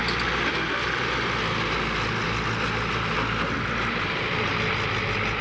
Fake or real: real